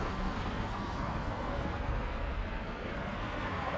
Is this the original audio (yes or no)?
no